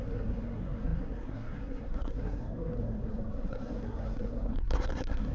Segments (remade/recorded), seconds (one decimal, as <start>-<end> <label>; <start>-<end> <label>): 0.0-5.3 remade